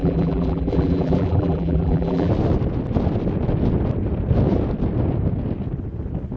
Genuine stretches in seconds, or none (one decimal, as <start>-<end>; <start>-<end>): 2.3-6.4